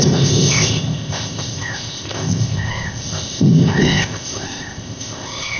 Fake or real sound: fake